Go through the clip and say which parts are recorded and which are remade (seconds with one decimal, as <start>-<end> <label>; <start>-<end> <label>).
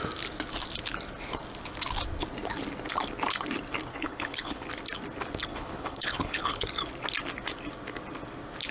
0.0-3.9 recorded; 3.9-4.7 remade; 4.7-5.5 recorded; 5.5-6.6 remade; 6.6-8.7 recorded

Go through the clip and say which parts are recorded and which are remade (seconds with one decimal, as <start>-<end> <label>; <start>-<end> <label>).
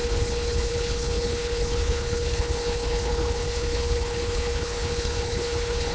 0.0-5.9 remade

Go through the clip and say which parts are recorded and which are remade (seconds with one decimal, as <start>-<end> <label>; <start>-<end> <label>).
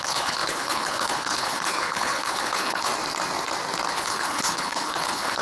0.0-2.9 remade; 2.9-3.9 recorded; 3.9-5.4 remade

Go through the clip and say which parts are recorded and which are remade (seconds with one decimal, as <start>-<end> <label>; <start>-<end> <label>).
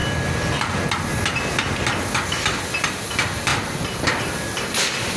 0.0-5.2 recorded